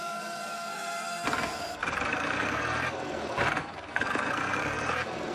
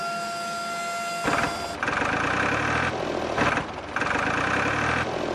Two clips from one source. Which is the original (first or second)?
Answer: second